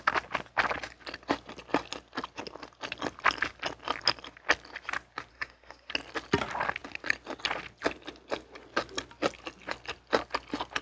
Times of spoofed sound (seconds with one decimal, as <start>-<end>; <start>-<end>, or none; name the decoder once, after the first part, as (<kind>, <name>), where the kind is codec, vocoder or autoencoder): 5.3-5.9 (codec, SNAC)